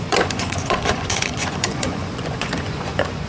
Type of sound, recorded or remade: remade